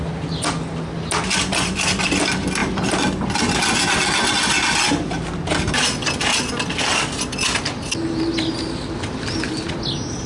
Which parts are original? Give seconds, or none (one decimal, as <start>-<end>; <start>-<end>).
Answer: 0.0-10.3